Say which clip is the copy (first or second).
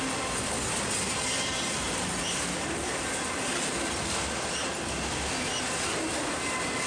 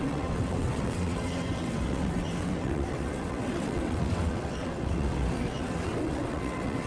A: second